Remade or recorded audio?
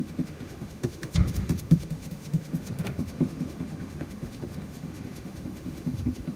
remade